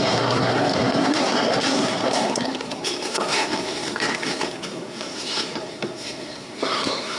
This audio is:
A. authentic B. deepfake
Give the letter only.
B